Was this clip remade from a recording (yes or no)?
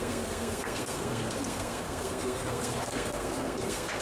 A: yes